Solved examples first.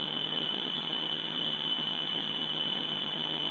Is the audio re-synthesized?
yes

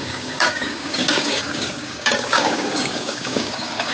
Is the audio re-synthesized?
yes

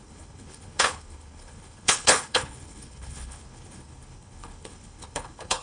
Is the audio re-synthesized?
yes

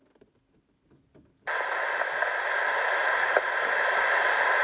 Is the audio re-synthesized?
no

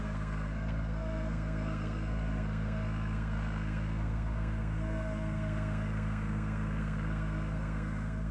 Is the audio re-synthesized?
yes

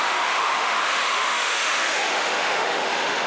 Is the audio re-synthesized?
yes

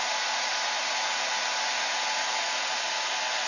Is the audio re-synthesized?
no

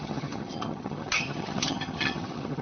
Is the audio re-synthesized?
yes